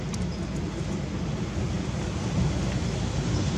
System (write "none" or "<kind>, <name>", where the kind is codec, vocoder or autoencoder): none